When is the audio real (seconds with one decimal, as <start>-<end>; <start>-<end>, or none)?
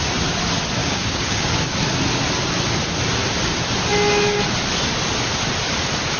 0.0-0.8; 1.5-6.2